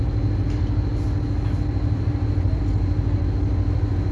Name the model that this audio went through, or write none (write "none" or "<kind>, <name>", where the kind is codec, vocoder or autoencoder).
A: none